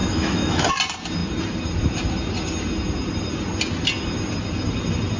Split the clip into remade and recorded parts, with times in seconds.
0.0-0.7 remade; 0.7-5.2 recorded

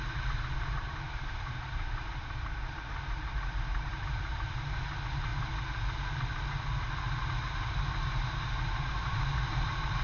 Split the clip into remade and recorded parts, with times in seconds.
0.0-5.3 remade; 5.3-8.8 recorded; 8.8-10.0 remade